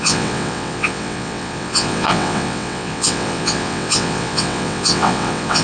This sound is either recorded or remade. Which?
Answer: remade